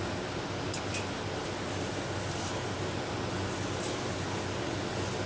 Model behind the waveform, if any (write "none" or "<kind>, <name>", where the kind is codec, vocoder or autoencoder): none